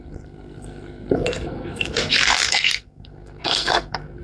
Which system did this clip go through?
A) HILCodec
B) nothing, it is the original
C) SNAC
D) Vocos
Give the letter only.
C